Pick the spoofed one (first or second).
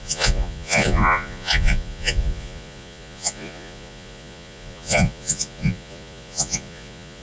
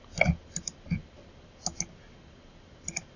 first